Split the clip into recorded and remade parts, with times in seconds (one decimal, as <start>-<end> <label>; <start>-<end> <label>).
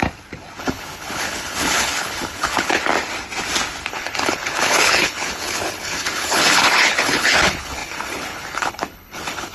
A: 0.0-0.6 recorded; 0.6-2.8 remade; 2.8-3.9 recorded; 3.9-9.5 remade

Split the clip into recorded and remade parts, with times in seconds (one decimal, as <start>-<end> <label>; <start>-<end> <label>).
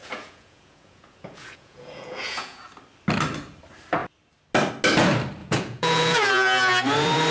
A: 0.0-2.6 remade; 2.6-5.4 recorded; 5.4-6.3 remade; 6.3-7.3 recorded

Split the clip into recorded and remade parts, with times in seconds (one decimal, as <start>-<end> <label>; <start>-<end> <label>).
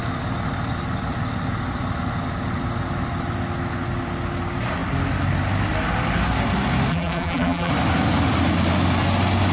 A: 0.0-6.9 recorded; 6.9-7.7 remade; 7.7-9.5 recorded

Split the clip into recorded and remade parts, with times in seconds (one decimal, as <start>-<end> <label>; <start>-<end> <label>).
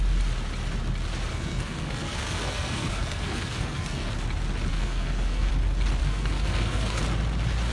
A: 0.0-1.3 recorded; 1.3-4.1 remade; 4.1-4.7 recorded; 4.7-5.5 remade; 5.5-6.0 recorded; 6.0-7.0 remade; 7.0-7.7 recorded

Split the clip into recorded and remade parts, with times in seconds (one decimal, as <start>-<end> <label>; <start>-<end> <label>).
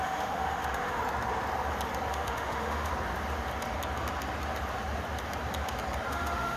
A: 0.0-1.0 remade; 1.0-2.1 recorded; 2.1-2.9 remade; 2.9-6.1 recorded; 6.1-6.6 remade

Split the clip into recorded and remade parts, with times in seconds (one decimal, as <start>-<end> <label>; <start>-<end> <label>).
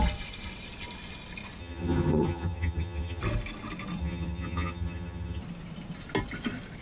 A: 0.0-1.6 recorded; 1.6-3.2 remade; 3.2-4.0 recorded; 4.0-5.4 remade; 5.4-6.8 recorded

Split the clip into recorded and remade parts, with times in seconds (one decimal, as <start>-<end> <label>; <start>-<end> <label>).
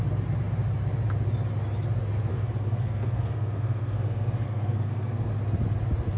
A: 0.0-2.3 recorded; 2.3-5.3 remade; 5.3-6.2 recorded